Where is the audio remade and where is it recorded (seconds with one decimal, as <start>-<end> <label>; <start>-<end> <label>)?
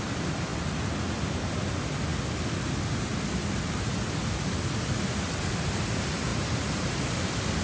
0.0-6.3 recorded; 6.3-7.0 remade; 7.0-7.6 recorded